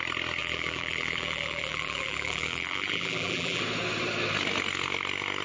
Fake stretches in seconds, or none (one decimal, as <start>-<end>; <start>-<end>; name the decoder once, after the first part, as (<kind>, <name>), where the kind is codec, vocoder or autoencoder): 0.4-3.6 (vocoder, BigVGAN v2)